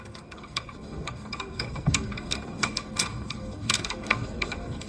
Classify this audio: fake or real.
fake